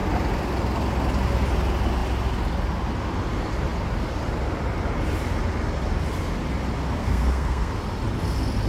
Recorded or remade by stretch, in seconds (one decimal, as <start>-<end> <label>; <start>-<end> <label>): 0.0-7.0 recorded; 7.0-7.7 remade; 7.7-8.7 recorded